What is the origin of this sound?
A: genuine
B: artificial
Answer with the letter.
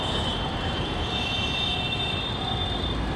A